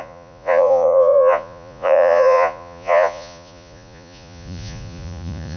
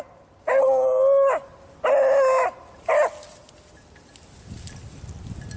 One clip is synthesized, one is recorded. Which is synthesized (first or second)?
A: first